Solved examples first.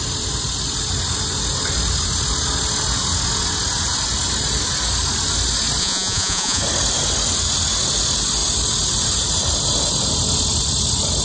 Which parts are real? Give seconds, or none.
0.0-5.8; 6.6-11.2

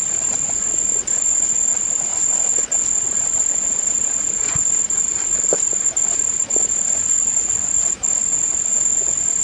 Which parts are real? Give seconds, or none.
0.0-9.4